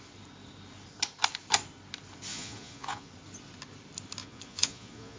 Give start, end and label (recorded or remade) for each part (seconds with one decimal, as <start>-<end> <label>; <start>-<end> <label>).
0.0-2.3 recorded; 2.3-3.1 remade; 3.1-4.2 recorded; 4.2-5.2 remade